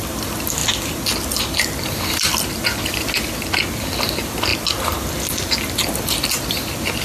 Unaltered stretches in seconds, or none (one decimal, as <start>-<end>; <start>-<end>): 0.0-7.0